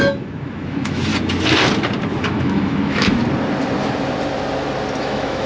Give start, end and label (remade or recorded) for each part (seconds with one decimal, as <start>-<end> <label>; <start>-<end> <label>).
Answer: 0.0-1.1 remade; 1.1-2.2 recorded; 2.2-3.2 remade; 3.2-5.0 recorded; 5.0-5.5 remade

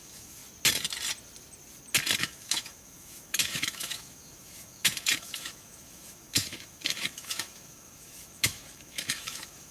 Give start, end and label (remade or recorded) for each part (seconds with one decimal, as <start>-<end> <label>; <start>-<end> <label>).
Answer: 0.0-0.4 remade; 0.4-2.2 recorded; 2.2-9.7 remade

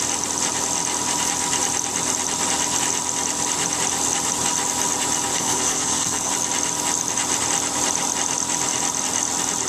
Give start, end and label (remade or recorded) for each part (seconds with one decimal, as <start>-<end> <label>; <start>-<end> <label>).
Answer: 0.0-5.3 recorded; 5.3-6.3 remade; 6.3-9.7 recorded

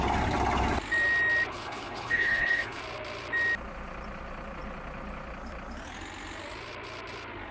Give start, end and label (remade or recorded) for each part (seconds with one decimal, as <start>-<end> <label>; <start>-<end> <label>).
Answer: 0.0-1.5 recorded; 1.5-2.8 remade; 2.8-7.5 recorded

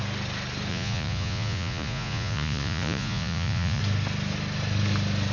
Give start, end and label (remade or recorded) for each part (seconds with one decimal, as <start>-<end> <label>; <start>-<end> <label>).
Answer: 0.0-0.7 recorded; 0.7-3.8 remade; 3.8-5.3 recorded